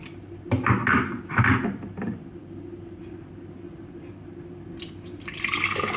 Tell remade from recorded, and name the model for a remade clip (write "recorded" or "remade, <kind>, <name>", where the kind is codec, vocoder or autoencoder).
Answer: remade, vocoder, BigVGAN v2